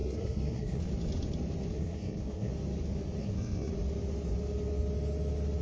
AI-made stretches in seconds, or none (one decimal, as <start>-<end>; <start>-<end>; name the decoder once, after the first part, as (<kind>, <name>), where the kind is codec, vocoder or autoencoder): 0.0-0.8 (codec, SNAC); 1.7-2.5; 3.2-3.7